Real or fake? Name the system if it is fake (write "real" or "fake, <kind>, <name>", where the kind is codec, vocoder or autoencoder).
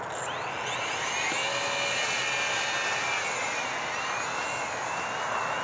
real